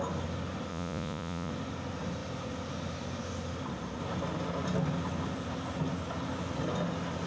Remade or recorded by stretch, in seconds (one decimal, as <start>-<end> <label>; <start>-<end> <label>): 0.0-0.7 recorded; 0.7-1.5 remade; 1.5-7.3 recorded